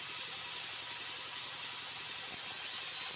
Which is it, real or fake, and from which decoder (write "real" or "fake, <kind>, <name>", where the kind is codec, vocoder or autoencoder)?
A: real